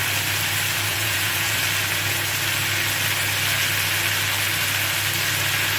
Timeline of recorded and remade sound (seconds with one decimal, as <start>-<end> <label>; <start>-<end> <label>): 0.0-0.9 recorded; 0.9-1.6 remade; 1.6-5.8 recorded

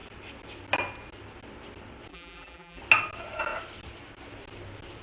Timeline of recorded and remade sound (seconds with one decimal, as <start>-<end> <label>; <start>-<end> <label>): 0.0-2.1 recorded; 2.1-2.8 remade; 2.8-5.0 recorded

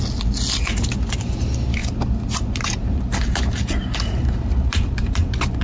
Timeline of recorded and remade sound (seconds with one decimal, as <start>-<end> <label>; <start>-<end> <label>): 0.0-1.8 recorded; 1.8-5.6 remade

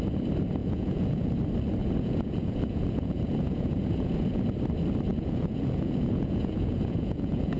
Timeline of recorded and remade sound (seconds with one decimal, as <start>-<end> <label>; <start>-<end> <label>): 0.0-0.6 recorded; 0.6-1.3 remade; 1.3-1.8 recorded; 1.8-4.4 remade; 4.4-5.1 recorded; 5.1-7.6 remade

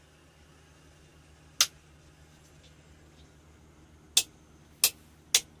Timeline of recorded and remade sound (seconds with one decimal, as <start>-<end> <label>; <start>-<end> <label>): 0.0-5.6 recorded